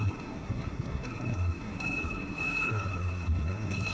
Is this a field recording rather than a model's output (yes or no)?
no